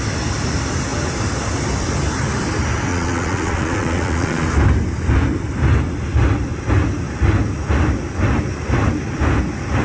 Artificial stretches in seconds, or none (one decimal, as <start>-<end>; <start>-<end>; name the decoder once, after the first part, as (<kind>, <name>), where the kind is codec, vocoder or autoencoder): 2.9-4.5 (vocoder, Vocos)